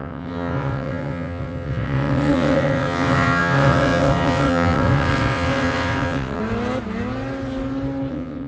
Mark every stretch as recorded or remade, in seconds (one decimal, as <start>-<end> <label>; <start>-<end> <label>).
0.0-6.4 remade; 6.4-8.1 recorded; 8.1-8.5 remade